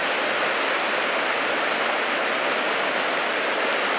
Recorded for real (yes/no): yes